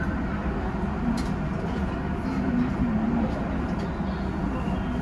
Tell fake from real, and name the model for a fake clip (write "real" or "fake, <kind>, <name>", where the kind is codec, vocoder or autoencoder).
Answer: real